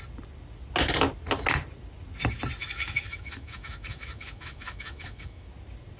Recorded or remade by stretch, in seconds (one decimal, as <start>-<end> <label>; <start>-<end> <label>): 0.0-2.6 recorded; 2.6-5.5 remade; 5.5-6.0 recorded